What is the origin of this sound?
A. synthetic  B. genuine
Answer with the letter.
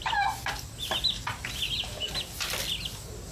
B